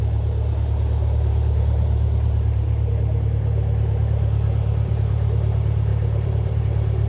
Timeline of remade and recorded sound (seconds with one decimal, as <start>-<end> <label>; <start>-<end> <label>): 0.0-7.1 remade